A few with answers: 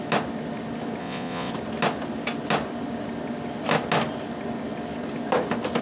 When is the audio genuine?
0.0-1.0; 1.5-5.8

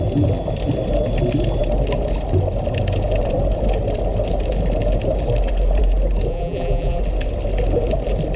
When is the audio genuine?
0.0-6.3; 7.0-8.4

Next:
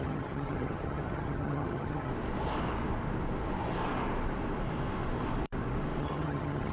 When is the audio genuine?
2.1-6.0

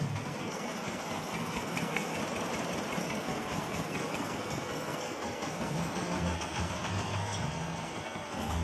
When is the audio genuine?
2.2-3.0

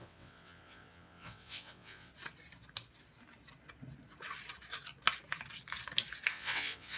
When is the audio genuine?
2.1-6.3

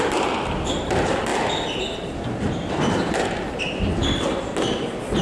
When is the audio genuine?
0.0-5.2